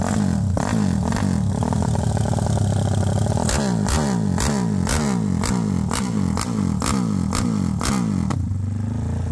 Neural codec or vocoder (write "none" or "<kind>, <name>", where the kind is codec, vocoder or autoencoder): none